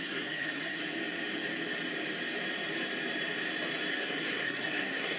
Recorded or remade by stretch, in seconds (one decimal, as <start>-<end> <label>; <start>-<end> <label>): 0.0-0.8 remade; 0.8-3.9 recorded; 3.9-5.2 remade